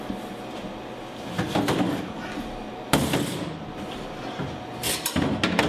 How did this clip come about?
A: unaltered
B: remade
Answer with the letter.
A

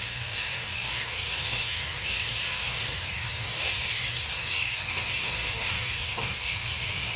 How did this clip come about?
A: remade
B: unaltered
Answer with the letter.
A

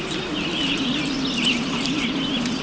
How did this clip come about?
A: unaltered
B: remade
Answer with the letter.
A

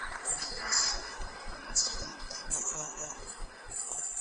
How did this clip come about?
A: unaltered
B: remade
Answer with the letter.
B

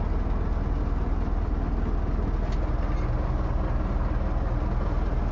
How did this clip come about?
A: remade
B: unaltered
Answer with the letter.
B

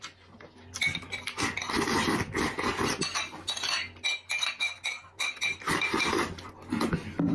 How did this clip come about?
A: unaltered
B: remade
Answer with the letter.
A